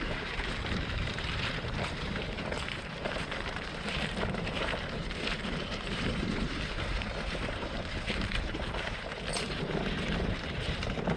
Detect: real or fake fake